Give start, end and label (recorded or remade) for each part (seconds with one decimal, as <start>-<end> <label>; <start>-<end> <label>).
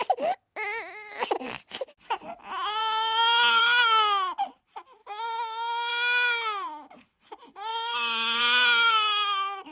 0.0-7.7 recorded; 7.7-8.4 remade; 8.4-9.7 recorded